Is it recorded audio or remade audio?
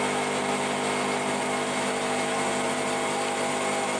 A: recorded